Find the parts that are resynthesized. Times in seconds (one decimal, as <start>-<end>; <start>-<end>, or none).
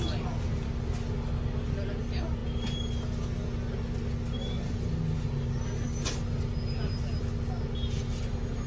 none